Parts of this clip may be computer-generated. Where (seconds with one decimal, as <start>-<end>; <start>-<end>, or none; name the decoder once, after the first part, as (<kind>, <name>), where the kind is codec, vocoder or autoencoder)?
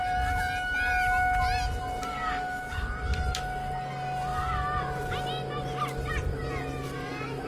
2.1-2.6 (codec, DAC)